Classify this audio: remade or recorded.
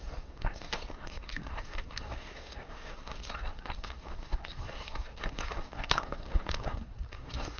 remade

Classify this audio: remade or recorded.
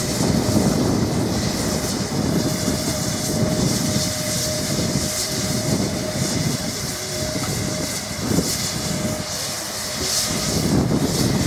remade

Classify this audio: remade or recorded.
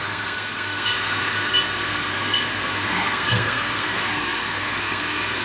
remade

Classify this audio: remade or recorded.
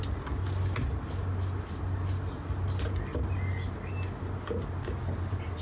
recorded